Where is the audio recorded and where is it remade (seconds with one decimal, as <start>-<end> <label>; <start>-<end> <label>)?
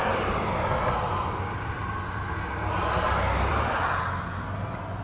0.0-5.0 recorded